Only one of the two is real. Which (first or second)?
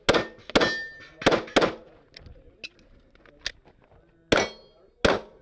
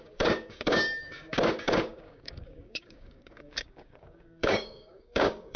first